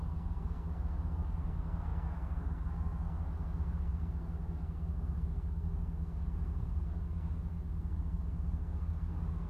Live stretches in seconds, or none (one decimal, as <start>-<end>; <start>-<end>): none